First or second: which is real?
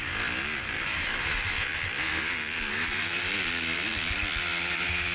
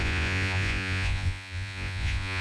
first